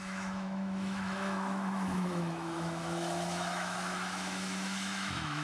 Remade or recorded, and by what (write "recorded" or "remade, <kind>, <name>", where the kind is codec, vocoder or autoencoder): remade, autoencoder, DAC-VAE